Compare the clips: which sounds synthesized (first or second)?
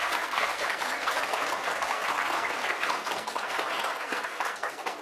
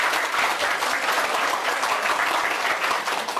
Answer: first